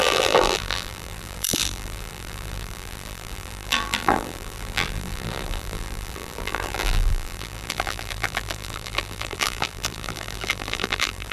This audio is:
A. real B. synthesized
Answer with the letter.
B